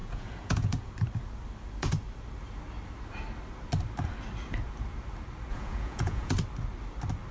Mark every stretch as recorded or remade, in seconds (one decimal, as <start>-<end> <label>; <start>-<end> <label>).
0.0-0.9 remade; 0.9-5.5 recorded; 5.5-6.3 remade; 6.3-7.3 recorded